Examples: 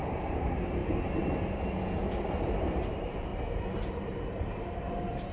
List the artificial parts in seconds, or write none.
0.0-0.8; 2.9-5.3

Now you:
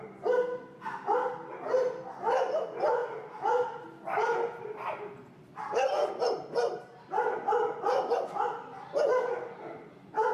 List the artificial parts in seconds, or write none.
none

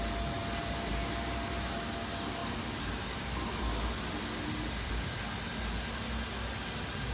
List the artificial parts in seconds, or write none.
2.4-4.9

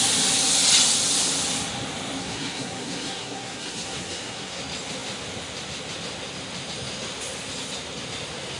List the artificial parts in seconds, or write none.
2.2-4.6

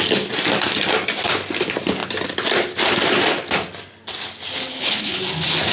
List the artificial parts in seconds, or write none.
4.7-5.2

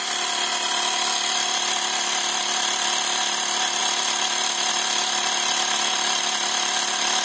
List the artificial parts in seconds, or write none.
none